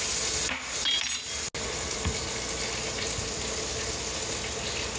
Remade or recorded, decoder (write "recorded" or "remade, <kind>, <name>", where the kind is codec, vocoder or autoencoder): recorded